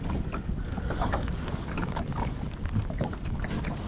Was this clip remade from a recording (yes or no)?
yes